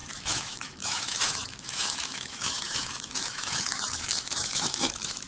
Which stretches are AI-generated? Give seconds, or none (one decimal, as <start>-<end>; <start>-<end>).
0.0-5.3